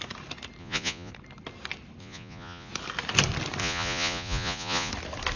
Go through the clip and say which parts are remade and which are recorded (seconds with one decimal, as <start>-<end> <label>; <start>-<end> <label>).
0.0-0.6 recorded; 0.6-1.1 remade; 1.1-2.0 recorded; 2.0-2.7 remade; 2.7-3.6 recorded; 3.6-4.9 remade; 4.9-5.4 recorded